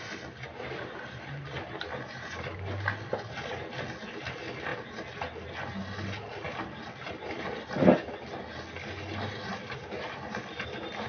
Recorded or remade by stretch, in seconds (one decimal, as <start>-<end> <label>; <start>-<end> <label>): 0.0-11.1 recorded